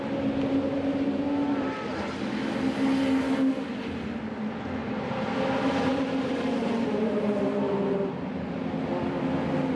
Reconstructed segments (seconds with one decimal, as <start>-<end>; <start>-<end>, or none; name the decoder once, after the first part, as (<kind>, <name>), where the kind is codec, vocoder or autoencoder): 4.8-7.4 (vocoder, BigVGAN v2)